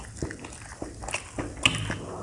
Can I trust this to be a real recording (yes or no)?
yes